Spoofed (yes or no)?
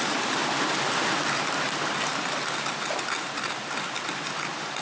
no